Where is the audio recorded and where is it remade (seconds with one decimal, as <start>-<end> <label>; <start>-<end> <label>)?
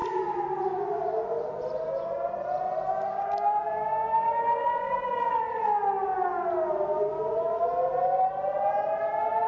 0.0-3.1 recorded; 3.1-5.4 remade; 5.4-9.5 recorded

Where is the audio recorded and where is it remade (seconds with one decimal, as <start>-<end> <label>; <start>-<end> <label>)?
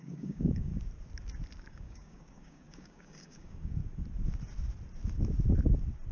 0.0-0.7 remade; 0.7-1.7 recorded; 1.7-3.8 remade; 3.8-6.1 recorded